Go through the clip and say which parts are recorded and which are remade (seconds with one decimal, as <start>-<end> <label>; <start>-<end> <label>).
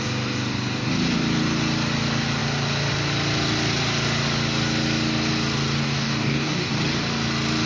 0.0-5.8 recorded; 5.8-6.7 remade; 6.7-7.7 recorded